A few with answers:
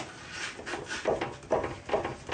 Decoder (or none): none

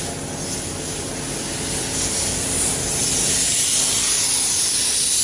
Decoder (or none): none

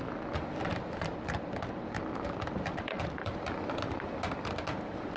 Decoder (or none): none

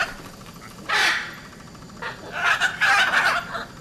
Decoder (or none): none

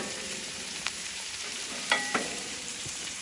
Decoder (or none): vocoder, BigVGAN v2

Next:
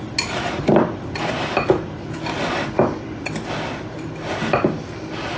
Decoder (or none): none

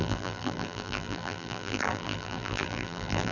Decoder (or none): vocoder, BigVGAN v2